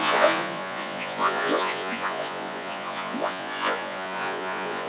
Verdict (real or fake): fake